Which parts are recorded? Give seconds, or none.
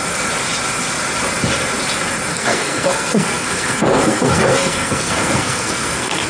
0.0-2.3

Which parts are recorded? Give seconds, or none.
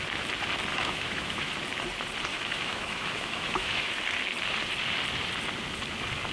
0.0-0.7; 1.5-2.3; 4.0-6.3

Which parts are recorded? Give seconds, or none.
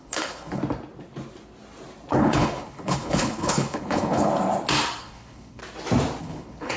0.6-2.1; 4.3-5.0; 5.6-6.2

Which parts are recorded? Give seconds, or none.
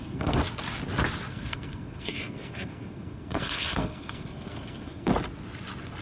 0.4-1.3; 5.1-6.0